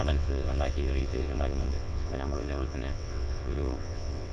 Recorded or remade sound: remade